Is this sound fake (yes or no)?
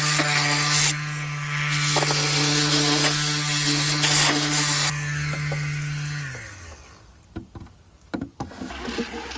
no